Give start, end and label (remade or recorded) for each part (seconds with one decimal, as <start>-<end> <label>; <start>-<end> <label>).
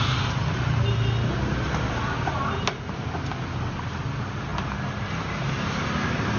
0.0-6.4 recorded